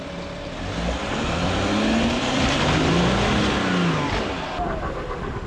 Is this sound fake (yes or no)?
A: no